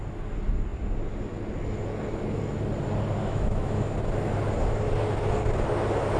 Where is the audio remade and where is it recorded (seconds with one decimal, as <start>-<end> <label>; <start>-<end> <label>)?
0.0-3.2 recorded; 3.2-3.9 remade; 3.9-6.2 recorded